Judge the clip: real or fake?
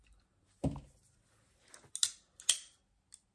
real